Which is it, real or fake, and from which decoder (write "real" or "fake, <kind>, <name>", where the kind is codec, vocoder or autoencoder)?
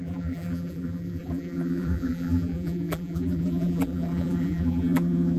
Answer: fake, vocoder, BigVGAN v2